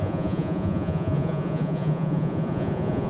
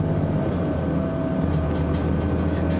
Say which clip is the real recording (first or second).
second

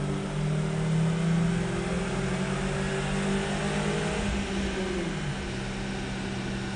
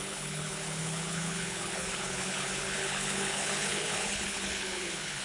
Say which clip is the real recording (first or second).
first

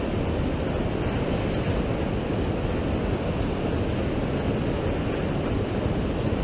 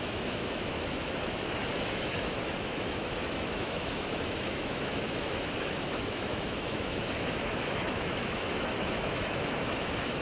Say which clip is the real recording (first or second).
first